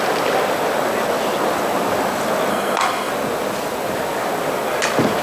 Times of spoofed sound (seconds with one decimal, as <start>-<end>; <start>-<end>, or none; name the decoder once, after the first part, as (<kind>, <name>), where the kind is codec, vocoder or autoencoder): 2.5-3.1 (codec, SNAC)